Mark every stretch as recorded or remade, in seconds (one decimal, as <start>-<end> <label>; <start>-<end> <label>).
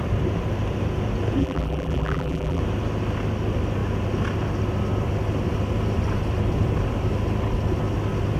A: 0.0-1.4 recorded; 1.4-2.6 remade; 2.6-8.4 recorded